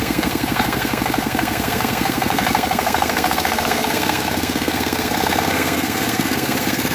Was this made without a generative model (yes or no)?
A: no